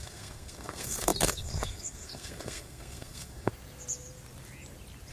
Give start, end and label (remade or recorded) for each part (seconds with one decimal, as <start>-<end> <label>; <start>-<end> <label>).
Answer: 0.0-3.5 remade; 3.5-5.1 recorded